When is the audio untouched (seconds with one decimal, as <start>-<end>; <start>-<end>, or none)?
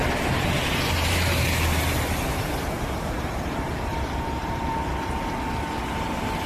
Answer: 0.0-3.9; 4.7-6.5